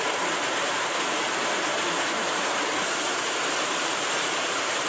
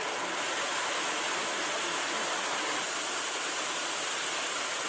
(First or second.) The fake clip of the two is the first